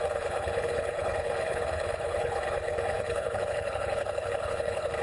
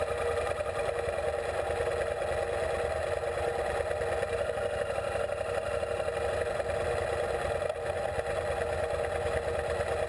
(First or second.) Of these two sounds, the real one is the second